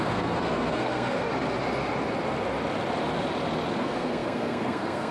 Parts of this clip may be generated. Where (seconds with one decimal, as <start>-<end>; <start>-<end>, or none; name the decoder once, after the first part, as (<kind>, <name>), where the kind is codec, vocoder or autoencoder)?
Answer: 0.0-1.3 (codec, SNAC); 3.8-5.1